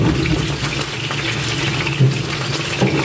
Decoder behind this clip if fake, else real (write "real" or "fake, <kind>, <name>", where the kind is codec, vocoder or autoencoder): real